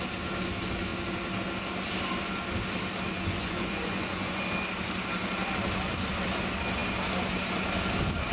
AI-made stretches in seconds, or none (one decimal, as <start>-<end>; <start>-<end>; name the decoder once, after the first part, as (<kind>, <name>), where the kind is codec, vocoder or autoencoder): 3.1-4.4 (vocoder, Vocos)